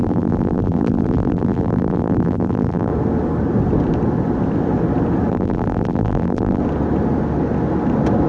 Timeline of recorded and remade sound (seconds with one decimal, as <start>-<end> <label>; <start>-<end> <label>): 0.0-2.9 remade; 2.9-5.3 recorded; 5.3-6.6 remade; 6.6-8.3 recorded